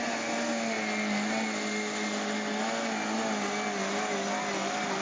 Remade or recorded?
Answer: recorded